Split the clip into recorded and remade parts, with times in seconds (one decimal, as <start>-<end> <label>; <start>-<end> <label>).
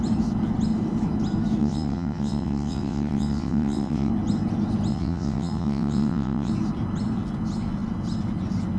0.0-1.6 recorded; 1.6-4.1 remade; 4.1-4.9 recorded; 4.9-6.5 remade; 6.5-8.8 recorded